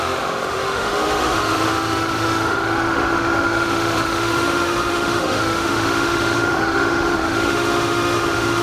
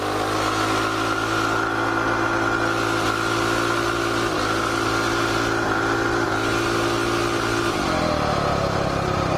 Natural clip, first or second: second